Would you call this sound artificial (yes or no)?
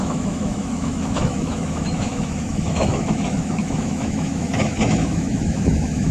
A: yes